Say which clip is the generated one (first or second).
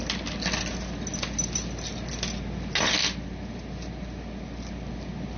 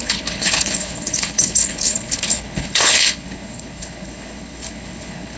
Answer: second